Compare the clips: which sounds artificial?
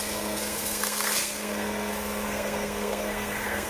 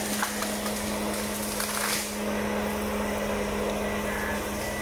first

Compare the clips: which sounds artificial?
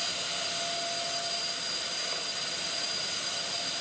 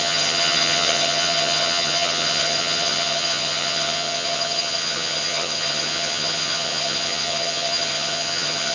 second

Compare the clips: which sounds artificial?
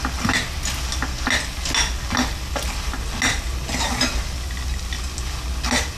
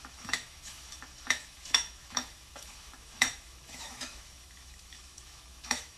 second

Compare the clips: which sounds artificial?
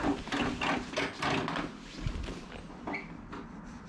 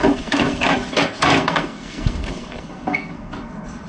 second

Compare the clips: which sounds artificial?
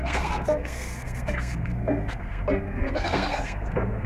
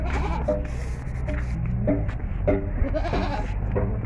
first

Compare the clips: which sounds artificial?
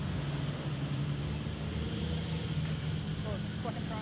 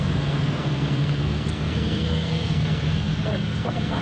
second